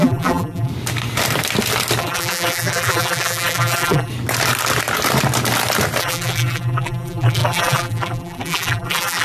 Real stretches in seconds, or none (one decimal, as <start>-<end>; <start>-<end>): 0.7-2.0; 4.1-6.0